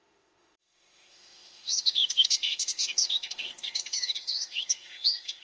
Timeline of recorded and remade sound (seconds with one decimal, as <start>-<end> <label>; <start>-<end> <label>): 0.0-5.4 remade